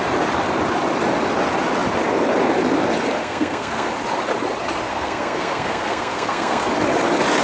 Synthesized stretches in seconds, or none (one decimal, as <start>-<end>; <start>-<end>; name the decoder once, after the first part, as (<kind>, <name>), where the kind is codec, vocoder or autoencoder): 3.2-3.9 (codec, SNAC); 4.9-6.7